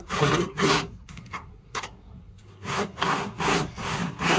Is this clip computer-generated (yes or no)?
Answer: yes